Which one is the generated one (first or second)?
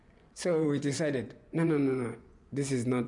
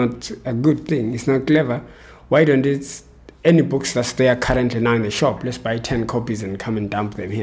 first